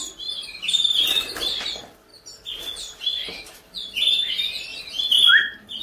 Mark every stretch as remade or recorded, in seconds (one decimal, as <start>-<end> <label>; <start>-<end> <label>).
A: 0.0-5.8 recorded